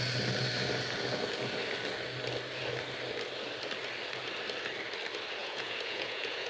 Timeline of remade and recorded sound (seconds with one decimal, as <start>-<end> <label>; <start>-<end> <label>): 0.0-5.4 recorded; 5.4-6.5 remade